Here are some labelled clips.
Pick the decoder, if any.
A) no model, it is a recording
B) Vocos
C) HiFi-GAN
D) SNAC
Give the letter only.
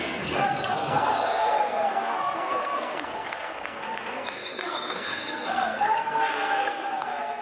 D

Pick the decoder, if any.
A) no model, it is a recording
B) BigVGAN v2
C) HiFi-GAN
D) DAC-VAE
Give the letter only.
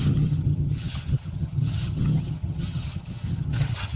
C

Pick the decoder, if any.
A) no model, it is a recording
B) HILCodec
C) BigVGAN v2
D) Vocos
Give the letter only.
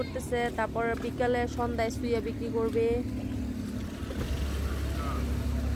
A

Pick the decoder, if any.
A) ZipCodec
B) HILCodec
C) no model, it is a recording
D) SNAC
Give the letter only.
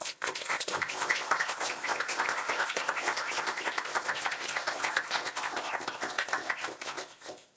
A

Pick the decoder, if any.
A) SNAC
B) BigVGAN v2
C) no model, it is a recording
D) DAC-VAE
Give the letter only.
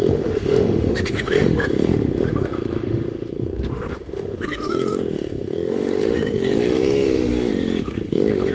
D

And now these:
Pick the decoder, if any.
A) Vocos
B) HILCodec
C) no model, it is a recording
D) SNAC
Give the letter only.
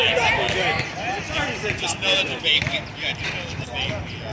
C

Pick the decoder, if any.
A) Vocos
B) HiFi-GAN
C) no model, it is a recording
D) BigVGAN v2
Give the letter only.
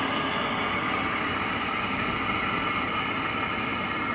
C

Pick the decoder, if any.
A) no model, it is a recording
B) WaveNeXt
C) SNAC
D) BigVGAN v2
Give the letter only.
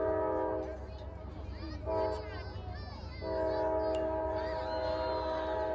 A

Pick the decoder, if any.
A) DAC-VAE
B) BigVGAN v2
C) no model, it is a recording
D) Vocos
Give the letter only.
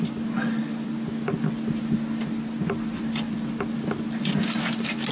C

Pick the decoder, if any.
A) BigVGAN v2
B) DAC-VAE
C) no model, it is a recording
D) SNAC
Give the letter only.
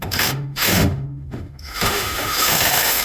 B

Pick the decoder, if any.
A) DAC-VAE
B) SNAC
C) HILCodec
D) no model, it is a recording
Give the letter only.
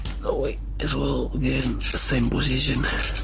D